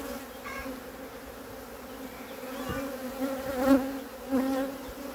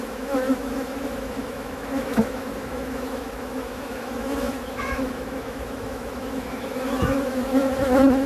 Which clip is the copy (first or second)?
second